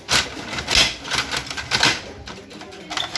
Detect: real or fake real